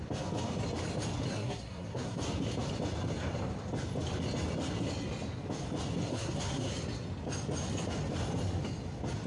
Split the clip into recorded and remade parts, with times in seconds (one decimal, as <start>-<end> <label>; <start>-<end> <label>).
0.0-1.3 recorded; 1.3-2.2 remade; 2.2-6.1 recorded; 6.1-6.7 remade; 6.7-9.3 recorded